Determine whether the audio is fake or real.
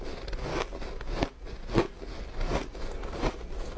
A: real